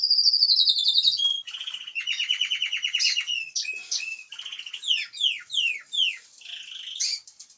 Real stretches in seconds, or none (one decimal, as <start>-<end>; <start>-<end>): 0.0-1.3; 4.3-7.6